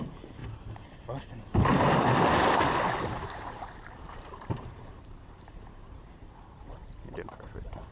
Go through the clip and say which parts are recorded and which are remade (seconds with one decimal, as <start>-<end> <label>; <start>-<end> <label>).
0.0-0.4 remade; 0.4-3.0 recorded; 3.0-7.9 remade